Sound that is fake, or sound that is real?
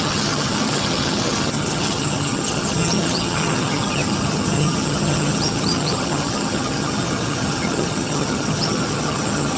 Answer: fake